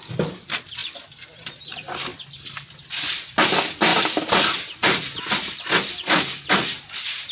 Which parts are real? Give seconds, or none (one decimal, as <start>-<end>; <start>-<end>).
0.0-7.3